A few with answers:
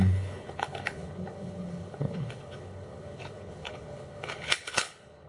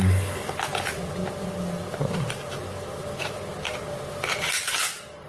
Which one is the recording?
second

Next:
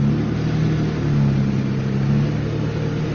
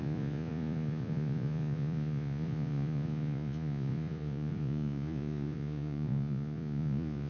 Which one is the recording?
first